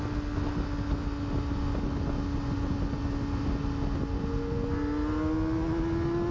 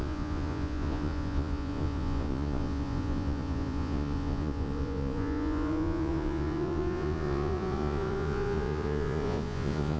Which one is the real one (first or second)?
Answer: first